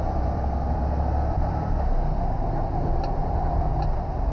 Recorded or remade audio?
remade